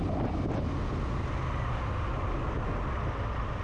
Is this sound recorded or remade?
recorded